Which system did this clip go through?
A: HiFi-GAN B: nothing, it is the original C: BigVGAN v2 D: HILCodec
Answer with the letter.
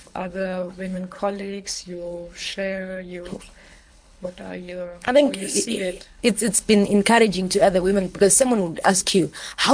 D